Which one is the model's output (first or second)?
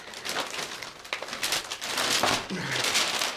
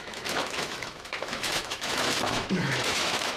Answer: second